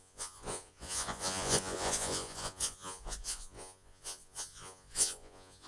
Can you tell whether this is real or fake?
fake